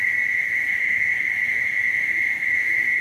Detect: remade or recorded recorded